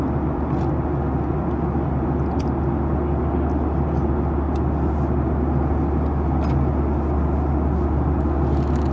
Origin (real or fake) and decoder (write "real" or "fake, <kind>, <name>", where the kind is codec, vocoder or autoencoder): real